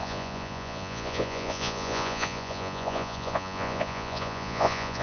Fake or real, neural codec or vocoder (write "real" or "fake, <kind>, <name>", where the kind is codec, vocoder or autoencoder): fake, vocoder, Vocos